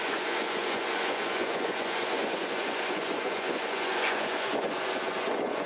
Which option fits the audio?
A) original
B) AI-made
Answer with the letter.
B